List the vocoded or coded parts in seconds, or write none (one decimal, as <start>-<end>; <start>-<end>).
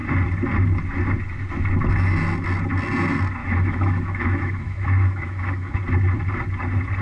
3.4-5.8